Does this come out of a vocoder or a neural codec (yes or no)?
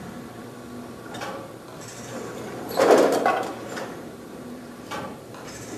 yes